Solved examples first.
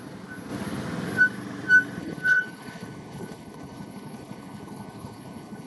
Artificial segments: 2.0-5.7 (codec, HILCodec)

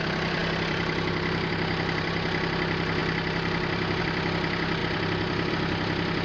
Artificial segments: 0.0-6.2 (vocoder, BigVGAN v2)

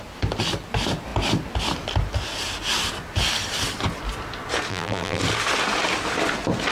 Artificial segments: 4.7-5.2 (vocoder, BigVGAN v2)

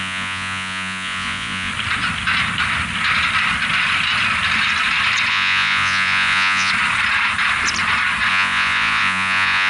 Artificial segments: 0.0-1.7 (vocoder, Vocos); 5.3-6.7; 8.3-9.7

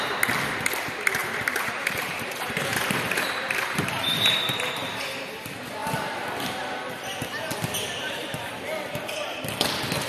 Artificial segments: 1.2-4.4 (vocoder, BigVGAN v2)

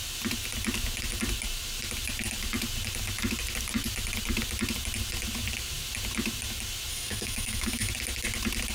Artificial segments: 6.9-7.9 (autoencoder, DAC-VAE)

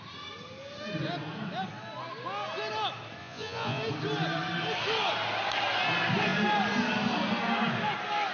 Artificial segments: 3.2-3.8 (vocoder, Vocos)

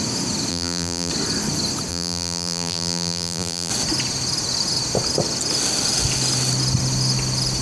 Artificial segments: 0.5-1.1 (vocoder, BigVGAN v2); 1.9-3.7